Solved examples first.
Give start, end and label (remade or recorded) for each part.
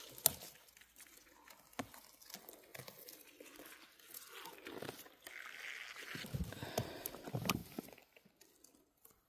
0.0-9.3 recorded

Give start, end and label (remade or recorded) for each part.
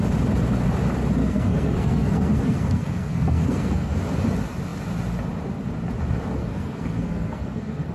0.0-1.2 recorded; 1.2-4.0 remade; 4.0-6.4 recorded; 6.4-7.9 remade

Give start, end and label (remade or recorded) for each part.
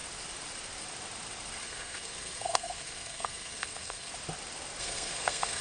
0.0-1.6 recorded; 1.6-4.1 remade; 4.1-4.8 recorded; 4.8-5.6 remade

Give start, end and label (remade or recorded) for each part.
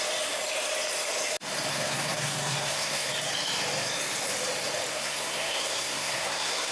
0.0-1.7 recorded; 1.7-3.1 remade; 3.1-4.9 recorded; 4.9-6.7 remade